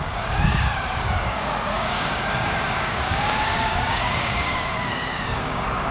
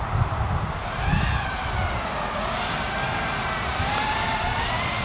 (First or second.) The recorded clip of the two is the second